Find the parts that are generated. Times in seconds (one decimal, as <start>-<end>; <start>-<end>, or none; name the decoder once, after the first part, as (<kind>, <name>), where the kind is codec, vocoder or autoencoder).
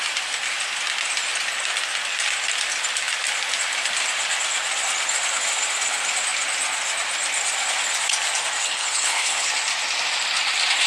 8.6-9.5 (codec, HILCodec)